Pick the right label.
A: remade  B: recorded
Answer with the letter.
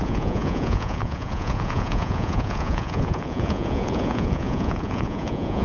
A